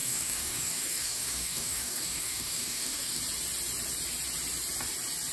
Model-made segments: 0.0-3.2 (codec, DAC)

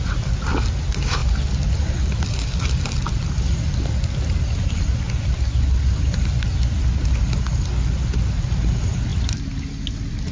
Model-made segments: none

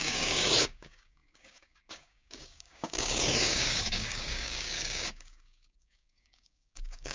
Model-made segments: 0.0-7.1 (codec, DAC)

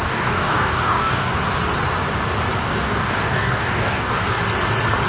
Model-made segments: 0.0-1.3 (codec, DAC); 2.6-4.4

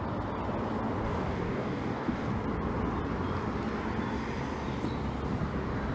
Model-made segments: 1.0-2.3 (codec, DAC)